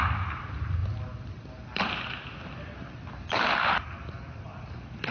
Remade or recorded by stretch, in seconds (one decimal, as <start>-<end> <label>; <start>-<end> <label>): 0.0-5.1 recorded